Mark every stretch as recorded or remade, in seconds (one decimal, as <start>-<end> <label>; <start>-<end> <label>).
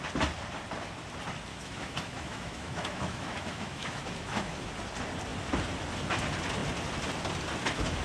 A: 0.0-1.5 recorded; 1.5-4.7 remade; 4.7-8.0 recorded